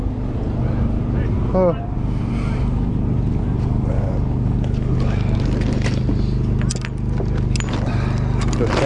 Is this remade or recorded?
recorded